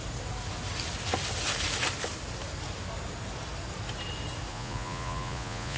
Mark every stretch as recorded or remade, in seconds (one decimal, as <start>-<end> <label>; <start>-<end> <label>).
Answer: 0.0-4.5 recorded; 4.5-5.8 remade